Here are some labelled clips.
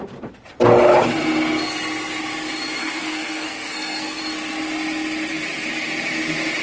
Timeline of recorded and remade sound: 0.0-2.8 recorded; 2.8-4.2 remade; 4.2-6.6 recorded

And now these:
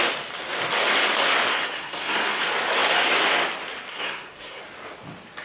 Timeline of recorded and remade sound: 0.0-1.5 recorded; 1.5-2.4 remade; 2.4-3.9 recorded; 3.9-4.6 remade; 4.6-5.4 recorded

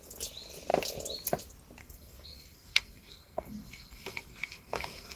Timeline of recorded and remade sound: 0.0-1.8 recorded; 1.8-5.2 remade

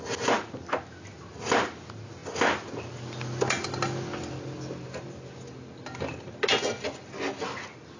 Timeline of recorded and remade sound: 0.0-8.0 recorded

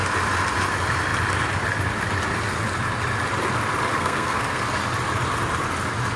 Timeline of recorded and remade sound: 0.0-3.9 recorded; 3.9-4.6 remade; 4.6-6.2 recorded

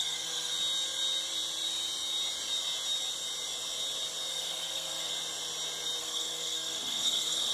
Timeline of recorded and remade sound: 0.0-0.5 remade; 0.5-4.3 recorded; 4.3-5.1 remade; 5.1-6.0 recorded; 6.0-7.5 remade

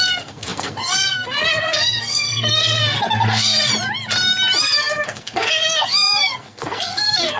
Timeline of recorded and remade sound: 0.0-3.7 remade; 3.7-4.6 recorded; 4.6-7.4 remade